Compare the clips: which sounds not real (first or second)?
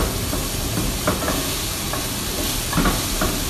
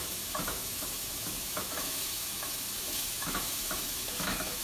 second